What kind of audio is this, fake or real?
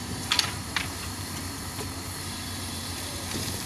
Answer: fake